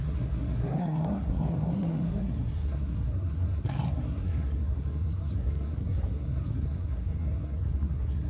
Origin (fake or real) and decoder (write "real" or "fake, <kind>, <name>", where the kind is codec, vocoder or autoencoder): fake, codec, SNAC